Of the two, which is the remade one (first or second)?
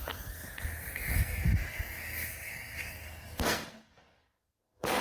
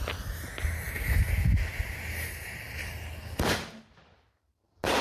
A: first